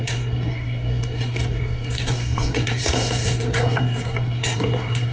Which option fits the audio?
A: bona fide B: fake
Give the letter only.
B